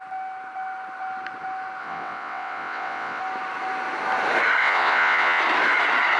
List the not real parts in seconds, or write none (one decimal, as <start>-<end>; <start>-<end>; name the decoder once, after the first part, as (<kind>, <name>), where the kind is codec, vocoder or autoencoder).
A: 1.8-3.2 (vocoder, WaveNeXt); 4.6-5.4